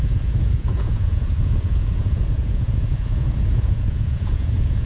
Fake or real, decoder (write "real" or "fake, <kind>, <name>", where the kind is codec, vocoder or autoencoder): fake, vocoder, Vocos